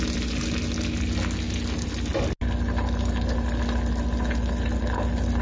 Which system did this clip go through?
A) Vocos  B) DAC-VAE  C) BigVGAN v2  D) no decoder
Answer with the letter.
D